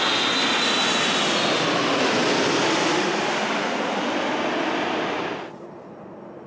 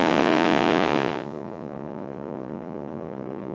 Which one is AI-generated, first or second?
second